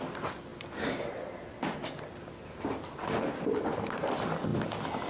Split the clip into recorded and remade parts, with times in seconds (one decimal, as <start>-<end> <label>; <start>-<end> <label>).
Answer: 0.0-5.1 recorded